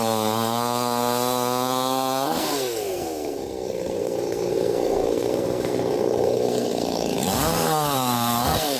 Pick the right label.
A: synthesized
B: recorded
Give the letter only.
A